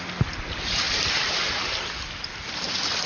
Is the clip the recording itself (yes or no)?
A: yes